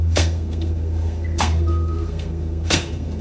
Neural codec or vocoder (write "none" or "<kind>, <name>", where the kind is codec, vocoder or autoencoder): codec, SNAC